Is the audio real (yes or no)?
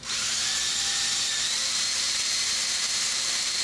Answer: no